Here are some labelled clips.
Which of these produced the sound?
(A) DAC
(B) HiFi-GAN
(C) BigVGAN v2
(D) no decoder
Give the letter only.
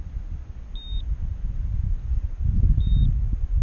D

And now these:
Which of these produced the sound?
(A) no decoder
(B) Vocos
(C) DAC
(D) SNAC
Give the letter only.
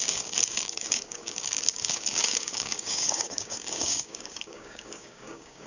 C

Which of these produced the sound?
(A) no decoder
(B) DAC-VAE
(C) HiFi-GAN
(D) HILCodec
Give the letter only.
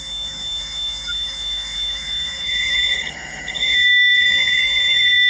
B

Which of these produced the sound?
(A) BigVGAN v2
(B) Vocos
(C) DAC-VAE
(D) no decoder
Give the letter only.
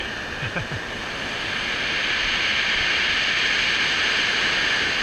D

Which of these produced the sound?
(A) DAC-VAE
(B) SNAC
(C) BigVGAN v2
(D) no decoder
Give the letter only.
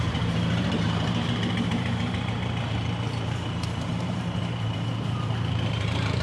C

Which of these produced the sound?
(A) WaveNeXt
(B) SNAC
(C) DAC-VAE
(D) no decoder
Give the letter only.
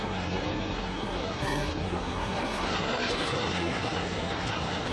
B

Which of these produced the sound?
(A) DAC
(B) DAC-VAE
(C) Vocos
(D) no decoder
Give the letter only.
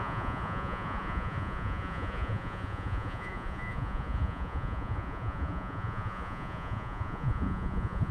C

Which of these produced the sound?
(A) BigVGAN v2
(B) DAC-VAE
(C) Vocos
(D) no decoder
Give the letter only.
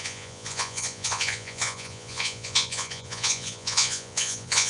C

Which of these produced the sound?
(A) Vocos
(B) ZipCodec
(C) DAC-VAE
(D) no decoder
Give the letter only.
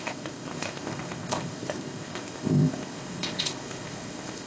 B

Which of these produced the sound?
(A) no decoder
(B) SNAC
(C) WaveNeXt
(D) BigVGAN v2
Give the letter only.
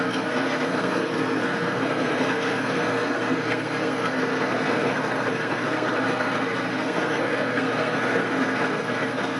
B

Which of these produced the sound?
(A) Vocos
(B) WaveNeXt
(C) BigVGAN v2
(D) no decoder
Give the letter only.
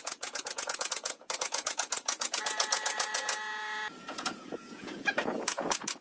A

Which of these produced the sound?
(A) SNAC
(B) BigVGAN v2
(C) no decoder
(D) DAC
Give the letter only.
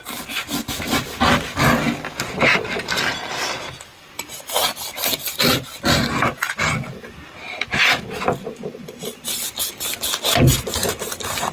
C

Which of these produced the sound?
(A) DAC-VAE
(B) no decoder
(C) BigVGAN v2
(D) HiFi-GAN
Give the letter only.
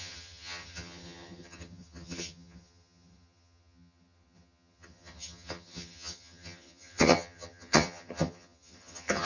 D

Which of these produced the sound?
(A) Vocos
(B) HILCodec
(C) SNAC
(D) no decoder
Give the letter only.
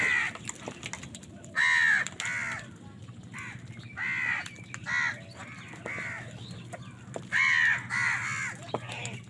D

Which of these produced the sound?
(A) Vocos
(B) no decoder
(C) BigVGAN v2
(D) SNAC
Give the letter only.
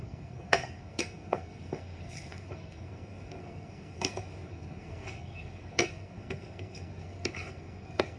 D